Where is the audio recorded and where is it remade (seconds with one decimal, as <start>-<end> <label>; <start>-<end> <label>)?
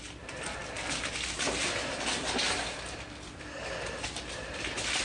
0.0-5.0 recorded